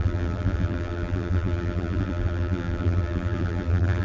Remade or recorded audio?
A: remade